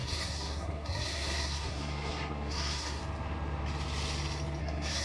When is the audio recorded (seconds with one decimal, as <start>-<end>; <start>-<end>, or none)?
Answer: 3.0-4.6

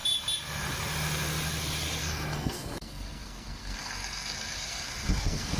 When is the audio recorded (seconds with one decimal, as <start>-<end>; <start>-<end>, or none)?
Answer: 0.0-2.0